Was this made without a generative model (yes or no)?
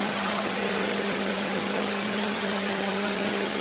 no